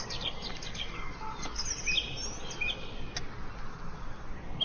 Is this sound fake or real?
real